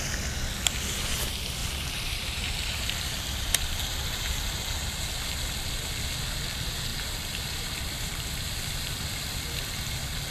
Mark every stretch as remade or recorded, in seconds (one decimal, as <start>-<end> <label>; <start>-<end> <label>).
0.0-1.6 recorded; 1.6-5.2 remade; 5.2-6.9 recorded; 6.9-8.9 remade; 8.9-10.3 recorded